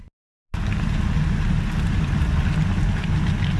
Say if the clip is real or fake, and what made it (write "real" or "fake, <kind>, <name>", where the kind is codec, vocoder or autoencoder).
real